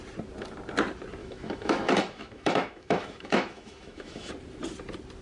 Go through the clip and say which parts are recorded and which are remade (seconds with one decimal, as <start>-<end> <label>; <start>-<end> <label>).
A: 0.0-1.2 recorded; 1.2-4.3 remade; 4.3-5.2 recorded